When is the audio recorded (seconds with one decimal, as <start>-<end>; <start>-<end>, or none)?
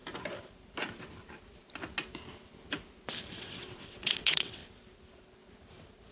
0.0-3.3; 4.6-6.1